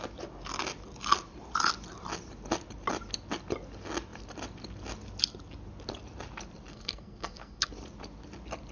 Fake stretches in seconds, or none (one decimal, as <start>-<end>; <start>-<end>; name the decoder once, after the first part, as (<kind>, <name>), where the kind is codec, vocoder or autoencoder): 6.7-7.7 (codec, SNAC)